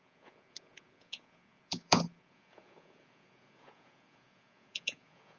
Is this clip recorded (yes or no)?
no